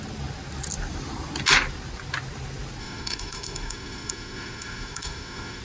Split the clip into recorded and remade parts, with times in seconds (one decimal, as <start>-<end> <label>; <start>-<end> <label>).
0.0-2.8 recorded; 2.8-5.6 remade

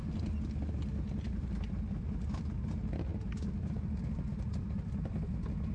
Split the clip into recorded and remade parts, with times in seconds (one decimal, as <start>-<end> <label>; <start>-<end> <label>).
0.0-5.7 recorded